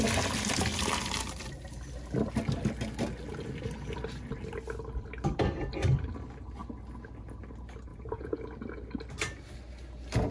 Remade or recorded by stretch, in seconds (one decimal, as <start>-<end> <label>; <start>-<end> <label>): 0.0-7.9 recorded; 7.9-8.4 remade; 8.4-10.3 recorded